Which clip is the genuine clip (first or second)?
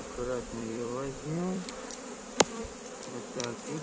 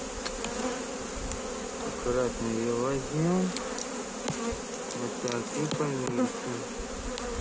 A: second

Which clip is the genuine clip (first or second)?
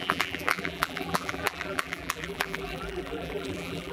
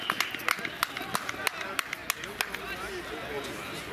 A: second